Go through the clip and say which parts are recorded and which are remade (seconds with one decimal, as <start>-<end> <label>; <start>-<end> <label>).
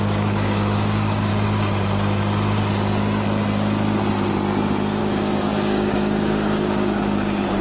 0.0-1.3 remade; 1.3-5.0 recorded; 5.0-7.6 remade